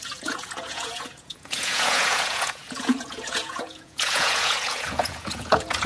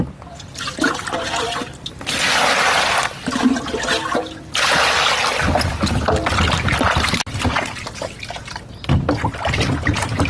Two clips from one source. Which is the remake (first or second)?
first